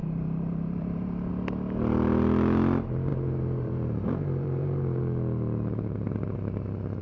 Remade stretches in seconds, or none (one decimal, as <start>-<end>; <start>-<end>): 0.0-1.3; 3.1-5.0